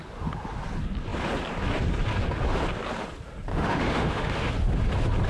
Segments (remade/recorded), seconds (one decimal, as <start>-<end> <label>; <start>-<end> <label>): 0.0-3.5 recorded; 3.5-4.5 remade; 4.5-5.3 recorded